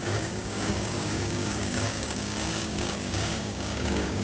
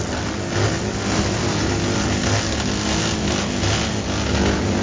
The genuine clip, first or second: second